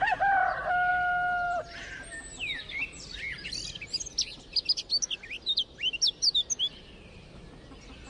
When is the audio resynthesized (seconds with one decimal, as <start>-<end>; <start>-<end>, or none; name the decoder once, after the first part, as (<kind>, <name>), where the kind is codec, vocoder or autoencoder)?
none